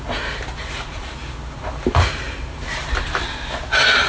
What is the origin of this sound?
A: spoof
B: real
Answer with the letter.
B